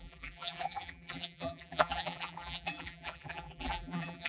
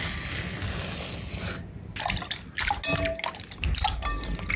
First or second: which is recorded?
second